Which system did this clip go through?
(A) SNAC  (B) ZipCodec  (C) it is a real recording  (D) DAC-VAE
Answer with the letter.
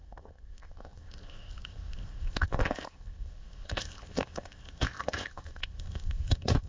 B